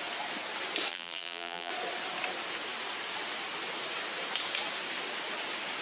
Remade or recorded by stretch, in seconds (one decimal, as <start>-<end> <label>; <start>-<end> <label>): 0.0-0.9 recorded; 0.9-1.7 remade; 1.7-5.8 recorded